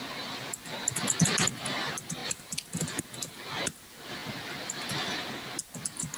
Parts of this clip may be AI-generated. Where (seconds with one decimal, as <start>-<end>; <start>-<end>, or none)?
none